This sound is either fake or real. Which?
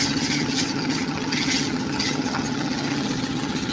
fake